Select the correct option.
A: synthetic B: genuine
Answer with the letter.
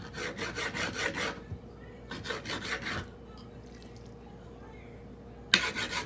B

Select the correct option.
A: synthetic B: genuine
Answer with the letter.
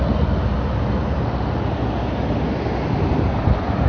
B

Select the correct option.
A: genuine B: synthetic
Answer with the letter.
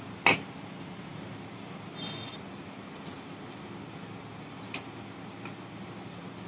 A